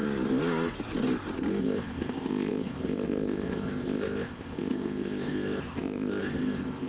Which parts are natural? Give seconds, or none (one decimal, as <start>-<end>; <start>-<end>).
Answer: 0.0-1.6